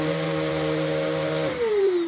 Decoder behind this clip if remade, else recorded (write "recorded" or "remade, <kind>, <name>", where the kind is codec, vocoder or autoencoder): remade, vocoder, BigVGAN v2